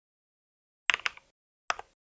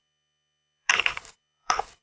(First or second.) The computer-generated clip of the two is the second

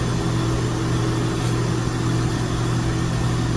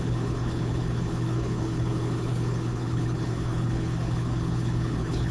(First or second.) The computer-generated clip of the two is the second